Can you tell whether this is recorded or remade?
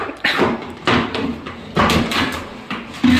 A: recorded